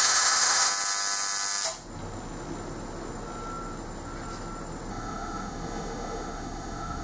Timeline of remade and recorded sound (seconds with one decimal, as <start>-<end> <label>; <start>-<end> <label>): 0.0-0.7 remade; 0.7-4.9 recorded; 4.9-7.0 remade